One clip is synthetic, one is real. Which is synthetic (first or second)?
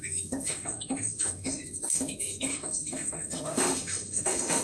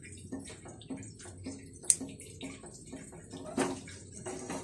first